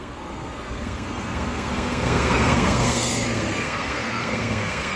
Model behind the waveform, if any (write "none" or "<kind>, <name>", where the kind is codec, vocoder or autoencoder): codec, SNAC